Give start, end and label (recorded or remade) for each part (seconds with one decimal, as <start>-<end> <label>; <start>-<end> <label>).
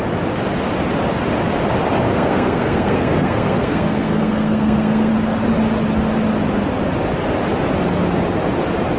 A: 0.0-2.1 recorded; 2.1-5.1 remade; 5.1-9.0 recorded